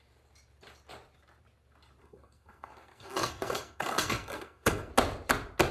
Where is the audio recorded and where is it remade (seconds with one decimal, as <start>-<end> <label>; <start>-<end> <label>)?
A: 0.0-2.0 recorded; 2.0-4.9 remade; 4.9-5.7 recorded